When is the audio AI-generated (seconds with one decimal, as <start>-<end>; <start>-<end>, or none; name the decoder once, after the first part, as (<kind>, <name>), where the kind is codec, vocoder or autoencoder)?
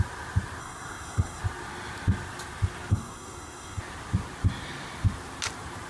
0.6-1.4 (codec, SNAC); 2.9-3.8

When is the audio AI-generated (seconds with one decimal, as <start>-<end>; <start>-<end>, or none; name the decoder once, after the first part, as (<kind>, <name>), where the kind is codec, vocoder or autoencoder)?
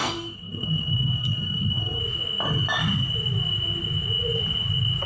0.0-2.0 (codec, SNAC)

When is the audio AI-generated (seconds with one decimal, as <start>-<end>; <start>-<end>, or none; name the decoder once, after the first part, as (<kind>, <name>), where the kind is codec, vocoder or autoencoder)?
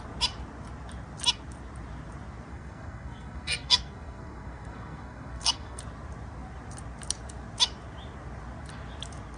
2.5-5.8 (codec, SNAC)